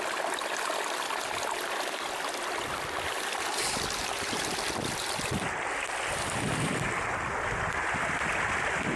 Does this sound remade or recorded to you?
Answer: recorded